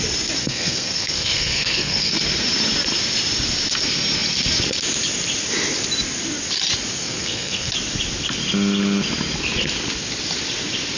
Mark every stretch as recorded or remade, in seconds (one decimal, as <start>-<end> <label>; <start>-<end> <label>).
0.0-0.4 recorded; 0.4-2.1 remade; 2.1-7.0 recorded; 7.0-7.7 remade; 7.7-11.0 recorded